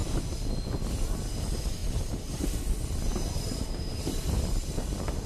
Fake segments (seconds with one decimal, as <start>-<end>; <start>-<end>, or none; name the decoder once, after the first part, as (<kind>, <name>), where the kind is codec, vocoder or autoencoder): 1.8-2.4 (vocoder, BigVGAN v2); 3.1-4.5